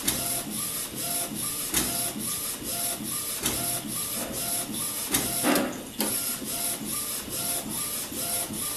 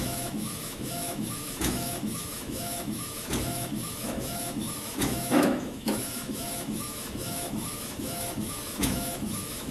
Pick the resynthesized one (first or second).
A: second